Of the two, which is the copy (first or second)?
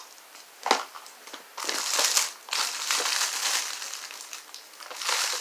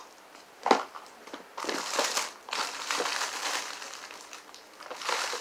second